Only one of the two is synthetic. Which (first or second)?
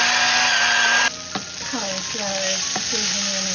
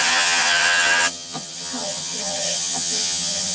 second